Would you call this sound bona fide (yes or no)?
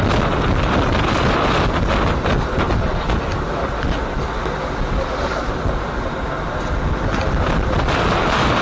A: yes